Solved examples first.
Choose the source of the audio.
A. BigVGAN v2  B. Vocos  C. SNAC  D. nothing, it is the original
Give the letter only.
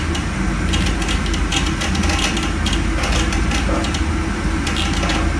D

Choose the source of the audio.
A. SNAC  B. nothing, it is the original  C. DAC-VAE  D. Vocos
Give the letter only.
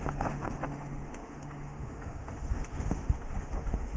C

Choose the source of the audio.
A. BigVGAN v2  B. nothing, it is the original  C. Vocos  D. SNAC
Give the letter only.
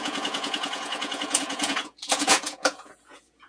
C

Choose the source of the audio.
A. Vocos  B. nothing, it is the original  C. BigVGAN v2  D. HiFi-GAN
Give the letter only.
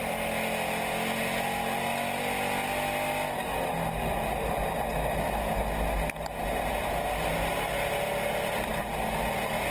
B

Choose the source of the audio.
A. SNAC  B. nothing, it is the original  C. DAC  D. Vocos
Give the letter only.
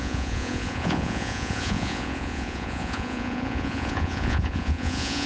D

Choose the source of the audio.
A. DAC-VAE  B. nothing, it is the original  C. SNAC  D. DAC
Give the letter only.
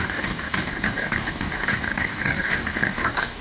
D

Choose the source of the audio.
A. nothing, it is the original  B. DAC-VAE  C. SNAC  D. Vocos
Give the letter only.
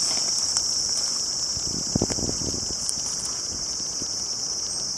A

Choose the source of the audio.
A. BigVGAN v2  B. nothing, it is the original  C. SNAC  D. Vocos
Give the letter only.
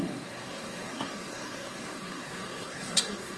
C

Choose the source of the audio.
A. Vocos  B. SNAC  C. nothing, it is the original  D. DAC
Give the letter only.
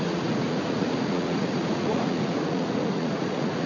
A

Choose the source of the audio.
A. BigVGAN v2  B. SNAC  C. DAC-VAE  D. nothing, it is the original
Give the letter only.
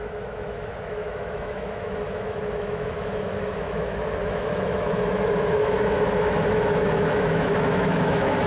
C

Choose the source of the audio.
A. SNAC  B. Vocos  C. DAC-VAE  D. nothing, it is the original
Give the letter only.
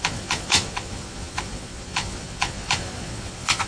B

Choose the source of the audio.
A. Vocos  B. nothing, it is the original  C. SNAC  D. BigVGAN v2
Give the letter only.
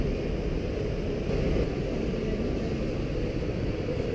B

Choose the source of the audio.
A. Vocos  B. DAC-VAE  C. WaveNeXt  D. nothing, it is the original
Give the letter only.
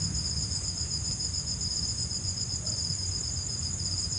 A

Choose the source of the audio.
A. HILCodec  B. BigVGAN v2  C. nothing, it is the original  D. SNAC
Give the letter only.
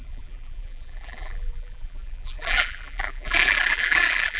B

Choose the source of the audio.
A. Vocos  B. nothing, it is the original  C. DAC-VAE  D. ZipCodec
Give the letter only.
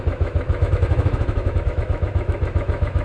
C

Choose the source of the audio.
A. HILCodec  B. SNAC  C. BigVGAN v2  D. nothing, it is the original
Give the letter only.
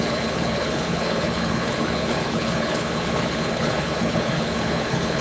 A